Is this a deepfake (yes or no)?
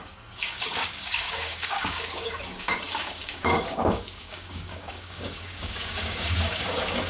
yes